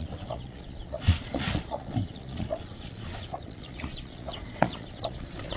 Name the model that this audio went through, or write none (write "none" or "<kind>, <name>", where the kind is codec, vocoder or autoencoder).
vocoder, Vocos